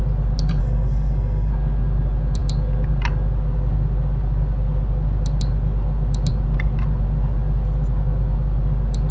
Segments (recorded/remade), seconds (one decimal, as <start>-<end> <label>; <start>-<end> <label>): 0.0-0.6 recorded; 0.6-1.5 remade; 1.5-9.1 recorded